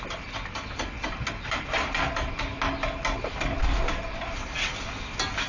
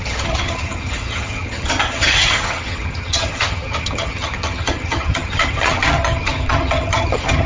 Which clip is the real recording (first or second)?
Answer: first